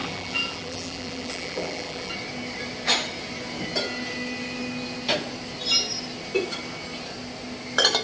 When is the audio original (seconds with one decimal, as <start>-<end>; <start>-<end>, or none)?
2.1-8.0